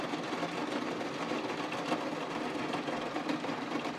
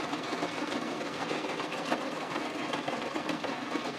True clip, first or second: first